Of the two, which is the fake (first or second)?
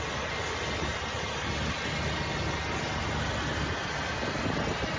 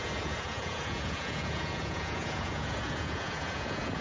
second